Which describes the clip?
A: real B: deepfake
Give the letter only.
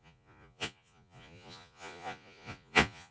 B